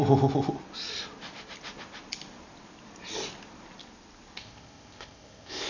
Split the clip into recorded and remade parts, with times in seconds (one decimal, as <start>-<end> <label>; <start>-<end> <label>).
0.0-4.4 recorded; 4.4-5.7 remade